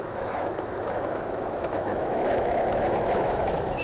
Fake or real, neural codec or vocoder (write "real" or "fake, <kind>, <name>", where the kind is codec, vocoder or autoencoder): fake, autoencoder, DAC-VAE